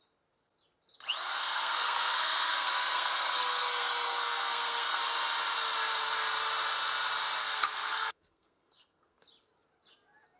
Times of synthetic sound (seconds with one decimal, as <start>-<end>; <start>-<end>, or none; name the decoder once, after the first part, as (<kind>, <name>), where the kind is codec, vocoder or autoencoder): 1.4-5.0 (codec, SNAC); 7.4-9.2